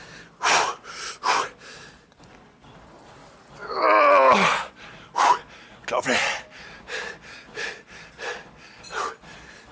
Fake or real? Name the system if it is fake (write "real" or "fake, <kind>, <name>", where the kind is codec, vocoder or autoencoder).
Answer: real